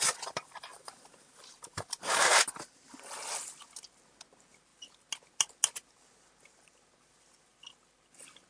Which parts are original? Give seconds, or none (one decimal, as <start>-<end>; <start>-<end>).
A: 0.0-0.7; 2.3-8.5